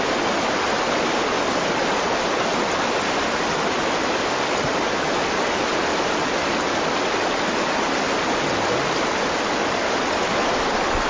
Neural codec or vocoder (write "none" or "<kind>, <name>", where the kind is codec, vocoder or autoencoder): none